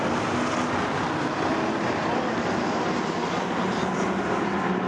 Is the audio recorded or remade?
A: recorded